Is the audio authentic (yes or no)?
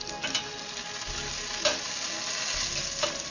yes